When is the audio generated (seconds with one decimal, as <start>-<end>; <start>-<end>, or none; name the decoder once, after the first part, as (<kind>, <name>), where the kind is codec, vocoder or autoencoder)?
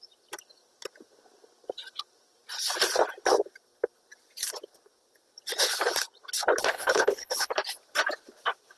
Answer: 6.7-7.5 (codec, HILCodec)